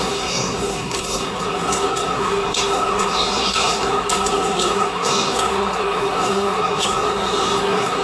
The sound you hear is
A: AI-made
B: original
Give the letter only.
A